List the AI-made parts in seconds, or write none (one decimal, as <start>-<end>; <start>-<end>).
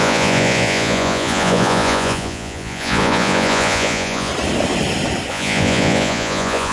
0.0-4.3; 5.3-6.7